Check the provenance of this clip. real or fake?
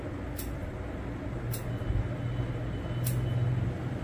real